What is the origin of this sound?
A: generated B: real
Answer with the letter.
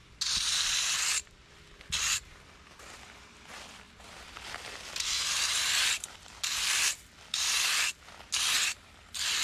B